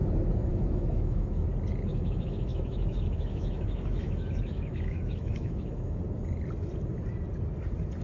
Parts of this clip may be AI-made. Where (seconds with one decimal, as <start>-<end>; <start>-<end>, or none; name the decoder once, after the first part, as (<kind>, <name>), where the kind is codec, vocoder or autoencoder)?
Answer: 0.5-1.5 (autoencoder, DAC-VAE); 1.9-6.0